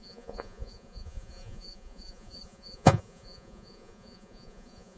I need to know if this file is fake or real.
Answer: fake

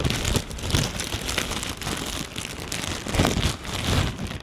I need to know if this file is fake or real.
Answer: real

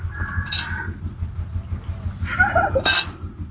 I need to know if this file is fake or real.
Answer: real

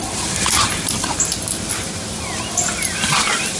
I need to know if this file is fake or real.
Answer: real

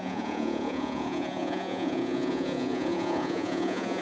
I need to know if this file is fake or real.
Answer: fake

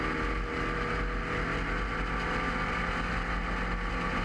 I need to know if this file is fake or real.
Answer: real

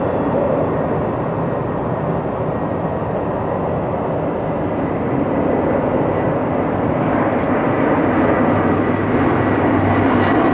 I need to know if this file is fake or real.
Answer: real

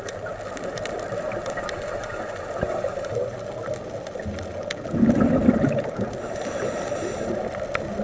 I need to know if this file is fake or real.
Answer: real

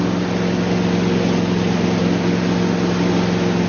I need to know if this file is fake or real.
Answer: real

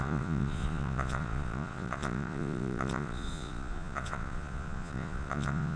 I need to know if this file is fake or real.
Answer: fake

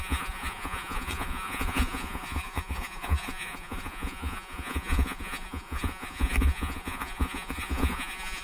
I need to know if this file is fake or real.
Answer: fake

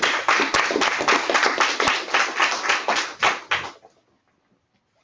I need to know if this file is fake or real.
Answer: real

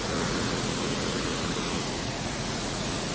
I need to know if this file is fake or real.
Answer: fake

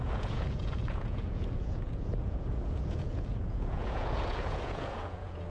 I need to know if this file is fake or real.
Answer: fake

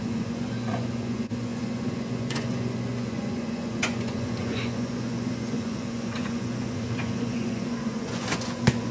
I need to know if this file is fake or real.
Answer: fake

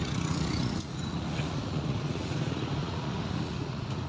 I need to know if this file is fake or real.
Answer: fake